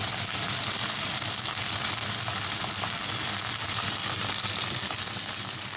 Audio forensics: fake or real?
real